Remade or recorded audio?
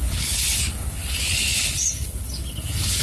remade